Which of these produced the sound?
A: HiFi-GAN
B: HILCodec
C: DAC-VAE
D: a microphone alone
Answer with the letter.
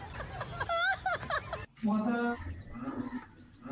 D